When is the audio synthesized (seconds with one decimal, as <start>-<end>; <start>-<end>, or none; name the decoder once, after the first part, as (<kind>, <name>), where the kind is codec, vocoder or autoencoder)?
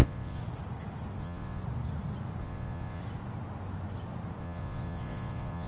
0.0-0.4 (vocoder, Vocos); 1.2-1.6; 2.4-3.0; 4.4-5.7